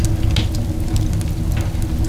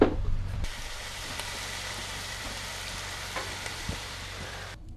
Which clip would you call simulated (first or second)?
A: second